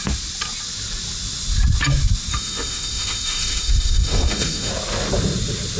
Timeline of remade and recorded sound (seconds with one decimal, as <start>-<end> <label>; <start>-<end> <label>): 0.0-2.3 recorded; 2.3-4.7 remade; 4.7-5.8 recorded